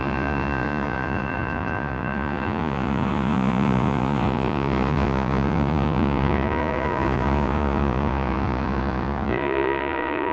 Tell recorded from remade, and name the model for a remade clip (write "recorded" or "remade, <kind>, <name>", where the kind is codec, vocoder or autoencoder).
remade, vocoder, Vocos